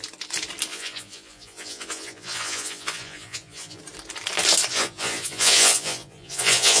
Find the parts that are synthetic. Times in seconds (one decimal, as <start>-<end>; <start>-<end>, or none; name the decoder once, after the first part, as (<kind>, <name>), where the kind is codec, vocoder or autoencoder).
0.7-3.8 (vocoder, Vocos); 4.7-6.8